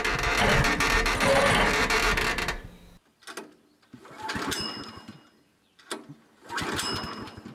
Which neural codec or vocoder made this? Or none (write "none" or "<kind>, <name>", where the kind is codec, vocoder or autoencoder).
none